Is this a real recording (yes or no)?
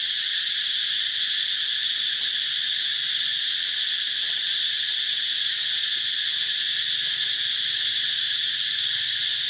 yes